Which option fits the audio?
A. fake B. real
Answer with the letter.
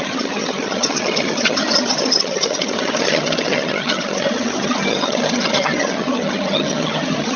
A